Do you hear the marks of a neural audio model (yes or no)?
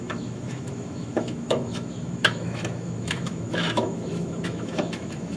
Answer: yes